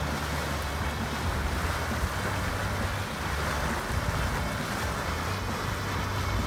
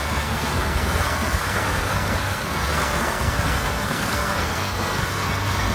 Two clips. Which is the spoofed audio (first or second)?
second